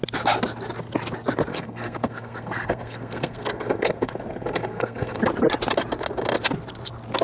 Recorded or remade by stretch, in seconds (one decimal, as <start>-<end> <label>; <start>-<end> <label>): 0.0-1.5 recorded; 1.5-5.2 remade; 5.2-7.2 recorded